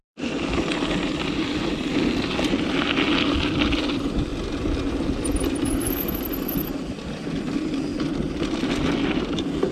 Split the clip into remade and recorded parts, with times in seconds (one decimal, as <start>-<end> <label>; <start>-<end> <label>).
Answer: 0.0-9.7 recorded